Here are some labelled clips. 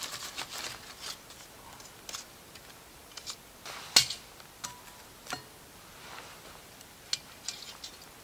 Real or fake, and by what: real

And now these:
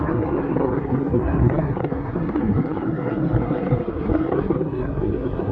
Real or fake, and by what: fake, codec, SNAC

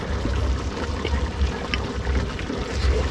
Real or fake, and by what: real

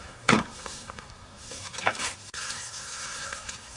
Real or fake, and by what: fake, codec, SNAC